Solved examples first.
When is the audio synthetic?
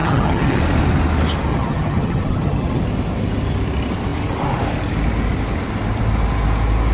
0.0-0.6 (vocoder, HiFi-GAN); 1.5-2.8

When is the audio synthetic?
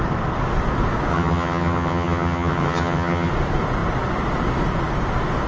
1.1-3.3 (vocoder, HiFi-GAN)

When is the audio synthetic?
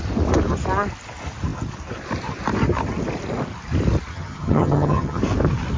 4.1-5.2 (vocoder, HiFi-GAN)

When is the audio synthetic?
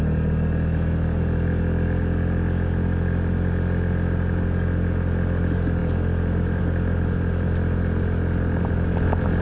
none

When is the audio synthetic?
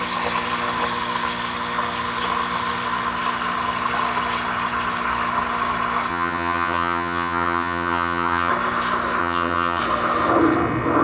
6.1-8.5 (vocoder, HiFi-GAN); 9.2-9.8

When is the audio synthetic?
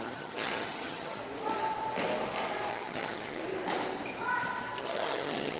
0.0-1.2 (vocoder, HiFi-GAN); 2.7-3.4; 4.8-5.6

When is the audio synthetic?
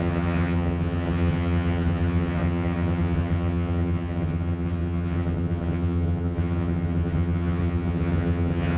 0.0-8.8 (vocoder, HiFi-GAN)